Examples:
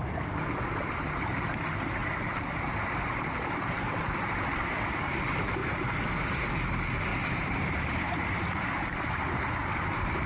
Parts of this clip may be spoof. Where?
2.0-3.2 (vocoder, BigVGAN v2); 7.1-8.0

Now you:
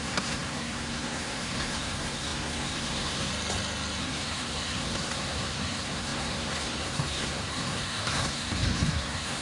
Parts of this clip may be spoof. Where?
0.0-3.3 (codec, SNAC); 4.0-9.4

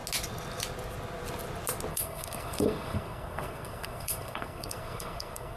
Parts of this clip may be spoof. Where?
1.9-5.6 (codec, SNAC)

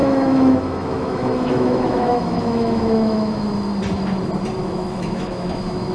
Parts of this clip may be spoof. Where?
0.0-3.5 (autoencoder, DAC-VAE); 4.6-5.9